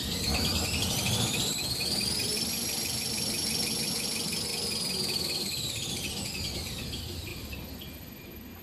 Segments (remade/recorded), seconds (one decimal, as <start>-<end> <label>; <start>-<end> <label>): 0.0-0.5 recorded; 0.5-4.1 remade; 4.1-4.5 recorded; 4.5-6.1 remade; 6.1-8.6 recorded